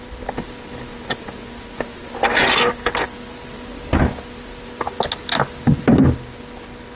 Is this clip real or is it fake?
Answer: real